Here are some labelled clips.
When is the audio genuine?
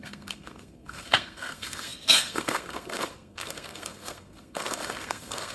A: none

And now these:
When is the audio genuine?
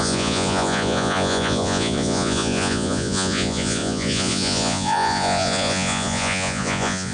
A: none